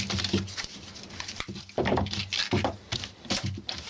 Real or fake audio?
fake